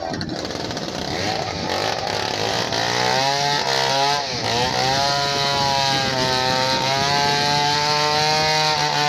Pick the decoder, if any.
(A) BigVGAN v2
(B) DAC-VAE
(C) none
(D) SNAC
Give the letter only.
C